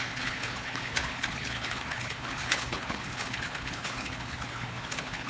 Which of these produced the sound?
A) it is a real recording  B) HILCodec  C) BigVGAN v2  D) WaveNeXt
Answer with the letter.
B